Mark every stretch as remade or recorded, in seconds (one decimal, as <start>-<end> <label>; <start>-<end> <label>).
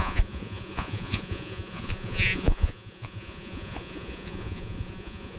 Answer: 0.0-5.4 remade